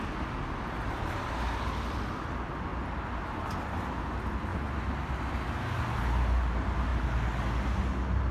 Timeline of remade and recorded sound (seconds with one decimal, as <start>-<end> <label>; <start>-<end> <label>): 0.0-8.3 recorded